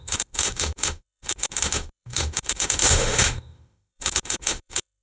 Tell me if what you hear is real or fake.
fake